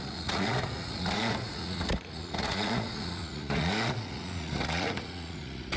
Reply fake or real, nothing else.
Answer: fake